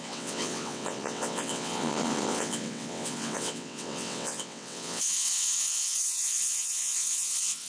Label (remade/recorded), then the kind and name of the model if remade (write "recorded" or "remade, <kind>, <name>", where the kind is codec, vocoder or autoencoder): remade, vocoder, WaveNeXt